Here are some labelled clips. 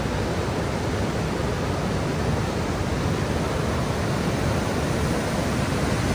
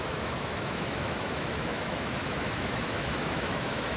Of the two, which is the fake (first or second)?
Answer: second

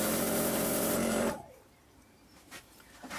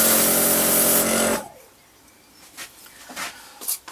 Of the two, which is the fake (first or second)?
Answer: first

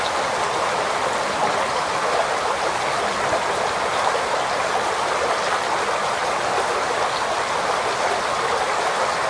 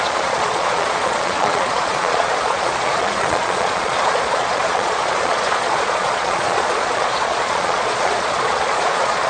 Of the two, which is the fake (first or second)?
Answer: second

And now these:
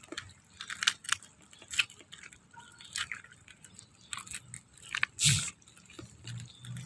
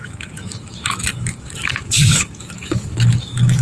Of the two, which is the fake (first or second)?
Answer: second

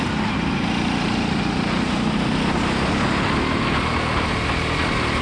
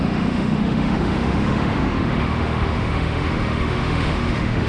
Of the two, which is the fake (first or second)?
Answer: second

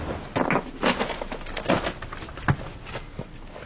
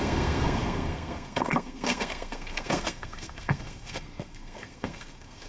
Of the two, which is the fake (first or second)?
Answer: second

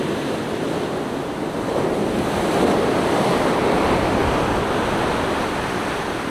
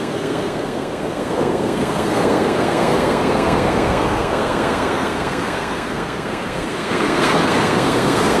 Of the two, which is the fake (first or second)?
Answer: second